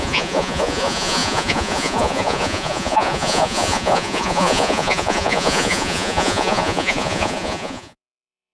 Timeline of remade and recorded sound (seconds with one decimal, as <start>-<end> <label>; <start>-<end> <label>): 0.0-8.5 remade